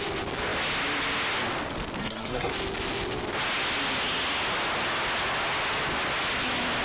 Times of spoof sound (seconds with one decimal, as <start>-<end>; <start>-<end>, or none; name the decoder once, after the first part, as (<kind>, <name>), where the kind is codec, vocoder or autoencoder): 2.0-2.5 (codec, SNAC)